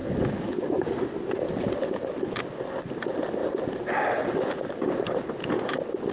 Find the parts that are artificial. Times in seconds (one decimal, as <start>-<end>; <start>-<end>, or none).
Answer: none